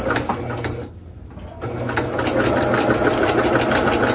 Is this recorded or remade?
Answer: recorded